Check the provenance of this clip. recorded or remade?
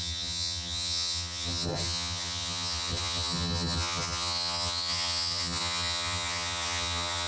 remade